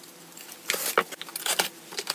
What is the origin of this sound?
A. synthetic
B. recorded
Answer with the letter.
B